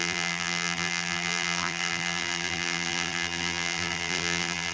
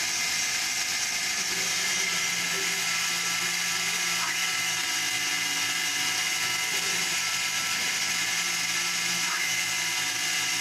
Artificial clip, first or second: first